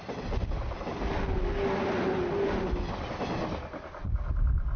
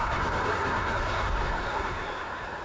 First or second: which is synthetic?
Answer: second